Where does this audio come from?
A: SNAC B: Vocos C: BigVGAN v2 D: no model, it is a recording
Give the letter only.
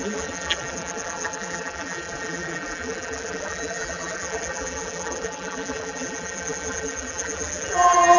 C